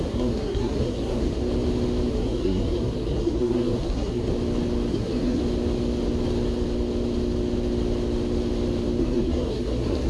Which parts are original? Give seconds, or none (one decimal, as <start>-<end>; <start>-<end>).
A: 1.4-2.1; 4.3-4.9; 5.4-9.0

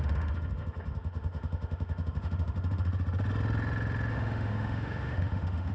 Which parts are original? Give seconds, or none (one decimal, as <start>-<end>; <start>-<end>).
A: 2.9-4.1

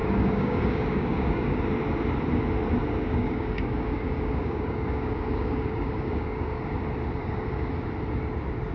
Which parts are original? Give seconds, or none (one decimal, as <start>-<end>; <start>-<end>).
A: 1.6-2.8; 6.6-7.2; 7.7-8.7

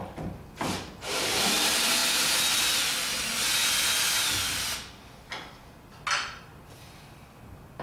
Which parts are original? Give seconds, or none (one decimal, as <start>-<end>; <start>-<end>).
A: 0.0-7.8

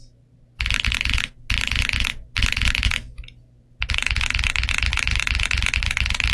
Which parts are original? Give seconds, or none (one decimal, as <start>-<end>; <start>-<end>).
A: 0.0-6.3

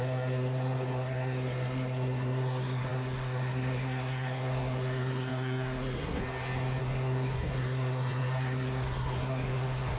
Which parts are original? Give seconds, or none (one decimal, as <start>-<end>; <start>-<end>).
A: 6.2-6.8

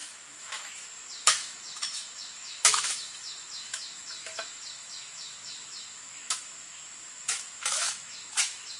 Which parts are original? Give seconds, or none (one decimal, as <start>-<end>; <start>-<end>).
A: none

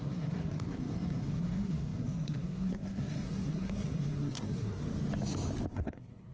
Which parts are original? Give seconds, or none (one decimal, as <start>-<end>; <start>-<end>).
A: 4.8-5.7